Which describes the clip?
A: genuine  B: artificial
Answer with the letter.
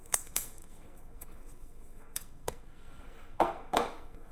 B